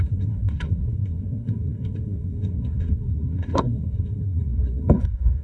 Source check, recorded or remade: remade